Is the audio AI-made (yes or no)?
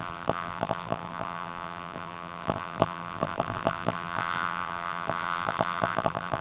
yes